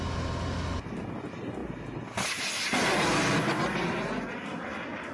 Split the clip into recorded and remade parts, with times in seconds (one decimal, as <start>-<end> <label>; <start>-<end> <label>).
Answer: 0.0-5.1 recorded